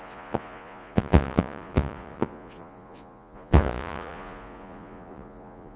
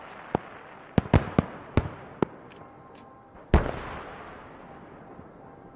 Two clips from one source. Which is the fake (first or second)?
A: first